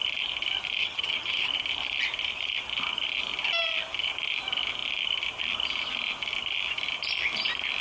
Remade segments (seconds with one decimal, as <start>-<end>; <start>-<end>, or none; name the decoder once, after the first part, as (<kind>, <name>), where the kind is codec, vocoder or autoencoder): 0.8-1.5 (vocoder, HiFi-GAN)